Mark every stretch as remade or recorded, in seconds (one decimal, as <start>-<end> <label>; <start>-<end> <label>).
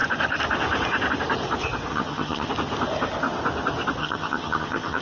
0.0-1.9 recorded; 1.9-2.5 remade; 2.5-4.0 recorded; 4.0-5.0 remade